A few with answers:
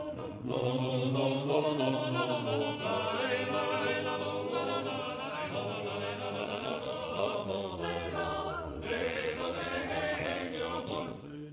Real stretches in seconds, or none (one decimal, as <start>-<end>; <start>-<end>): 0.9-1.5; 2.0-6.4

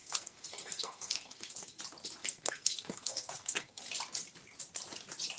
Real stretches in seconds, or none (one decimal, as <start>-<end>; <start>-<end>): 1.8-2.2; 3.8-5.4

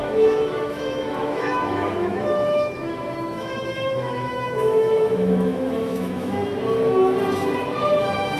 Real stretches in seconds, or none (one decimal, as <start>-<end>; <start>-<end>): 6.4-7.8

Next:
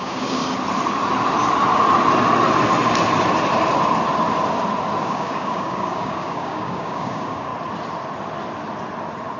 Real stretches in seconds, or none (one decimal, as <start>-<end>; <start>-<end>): 0.4-5.0; 7.5-9.4